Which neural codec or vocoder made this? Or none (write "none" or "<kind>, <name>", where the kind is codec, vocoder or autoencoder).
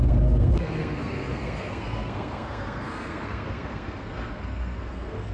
codec, SNAC